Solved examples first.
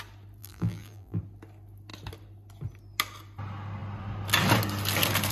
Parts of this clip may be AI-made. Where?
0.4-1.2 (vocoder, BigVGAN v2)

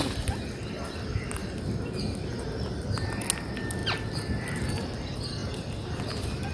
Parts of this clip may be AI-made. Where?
none

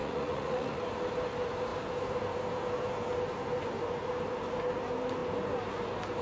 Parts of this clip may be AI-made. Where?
0.0-0.8 (vocoder, Vocos)

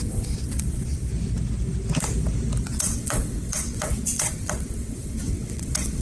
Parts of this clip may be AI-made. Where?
0.0-1.1 (vocoder, WaveNeXt); 2.6-6.0

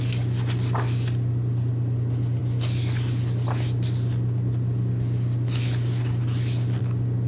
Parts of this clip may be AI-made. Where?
none

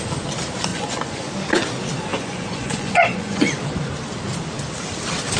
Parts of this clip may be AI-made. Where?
0.7-1.3 (vocoder, Vocos); 2.1-3.6